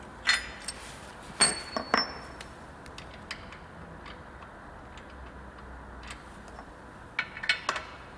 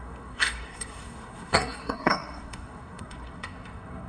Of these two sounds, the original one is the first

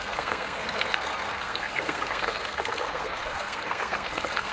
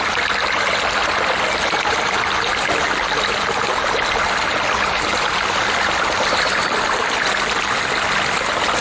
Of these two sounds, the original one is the second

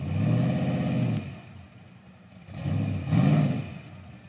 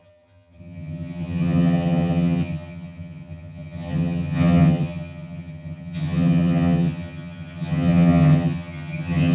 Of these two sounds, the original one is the first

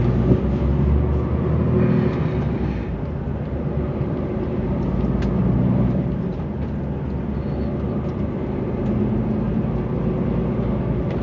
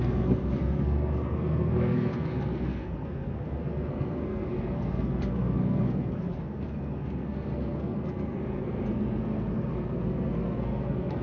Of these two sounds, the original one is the first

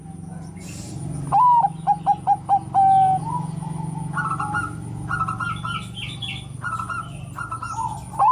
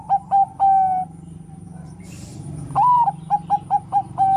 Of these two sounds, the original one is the first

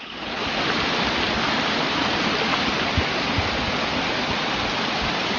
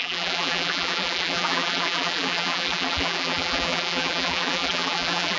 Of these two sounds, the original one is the first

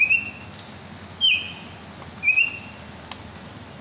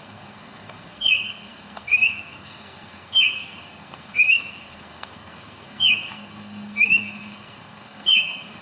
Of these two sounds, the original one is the first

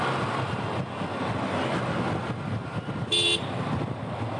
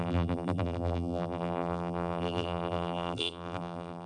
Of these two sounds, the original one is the first